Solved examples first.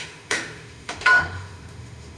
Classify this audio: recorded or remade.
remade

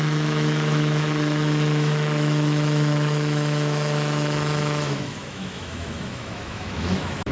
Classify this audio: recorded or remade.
remade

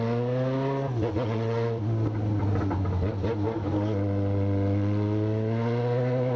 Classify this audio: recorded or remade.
recorded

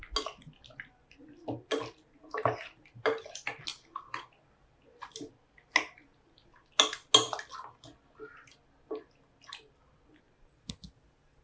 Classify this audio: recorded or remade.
recorded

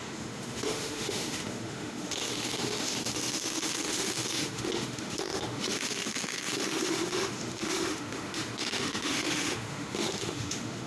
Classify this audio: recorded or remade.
remade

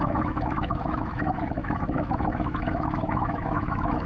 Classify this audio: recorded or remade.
remade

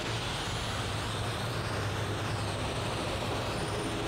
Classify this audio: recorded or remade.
recorded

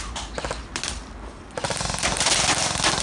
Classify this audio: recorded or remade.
recorded